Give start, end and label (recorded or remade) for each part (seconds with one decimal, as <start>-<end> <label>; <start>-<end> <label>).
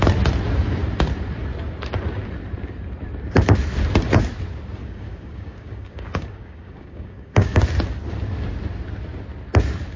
0.0-4.8 recorded; 4.8-7.6 remade; 7.6-10.0 recorded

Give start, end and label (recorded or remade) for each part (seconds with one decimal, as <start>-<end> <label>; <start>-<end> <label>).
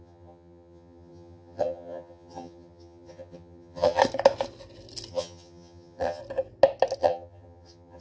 0.0-4.0 remade; 4.0-5.1 recorded; 5.1-6.2 remade; 6.2-7.0 recorded; 7.0-8.0 remade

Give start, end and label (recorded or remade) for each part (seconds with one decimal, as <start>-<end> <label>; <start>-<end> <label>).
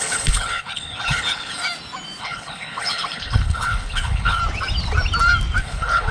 0.0-1.6 remade; 1.6-2.2 recorded; 2.2-4.4 remade; 4.4-5.6 recorded; 5.6-6.1 remade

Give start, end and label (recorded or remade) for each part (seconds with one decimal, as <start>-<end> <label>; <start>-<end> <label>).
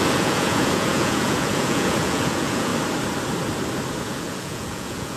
0.0-2.7 remade; 2.7-4.0 recorded; 4.0-5.2 remade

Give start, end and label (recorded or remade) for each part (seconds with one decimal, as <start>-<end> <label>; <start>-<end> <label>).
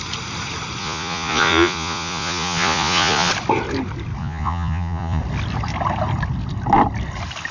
0.0-0.8 recorded; 0.8-3.3 remade; 3.3-4.2 recorded; 4.2-5.2 remade; 5.2-7.5 recorded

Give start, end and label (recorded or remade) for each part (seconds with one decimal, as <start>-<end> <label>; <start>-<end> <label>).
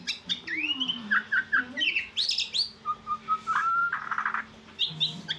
0.0-5.4 recorded